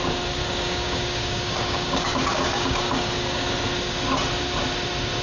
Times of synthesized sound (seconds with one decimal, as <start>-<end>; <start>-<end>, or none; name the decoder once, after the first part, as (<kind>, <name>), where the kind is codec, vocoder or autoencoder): 0.4-3.5 (codec, DAC)

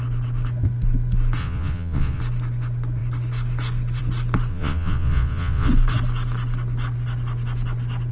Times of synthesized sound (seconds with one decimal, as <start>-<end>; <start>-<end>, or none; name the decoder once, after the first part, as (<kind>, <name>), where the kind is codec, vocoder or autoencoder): 1.4-2.2 (vocoder, Vocos); 4.5-5.7

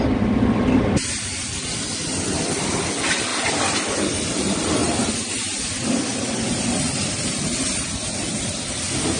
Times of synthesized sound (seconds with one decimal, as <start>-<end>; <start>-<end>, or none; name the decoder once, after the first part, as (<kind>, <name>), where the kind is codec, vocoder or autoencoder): none

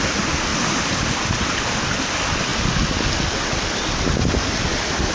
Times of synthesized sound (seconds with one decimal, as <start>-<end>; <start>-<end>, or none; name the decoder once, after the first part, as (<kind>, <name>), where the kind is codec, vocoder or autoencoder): none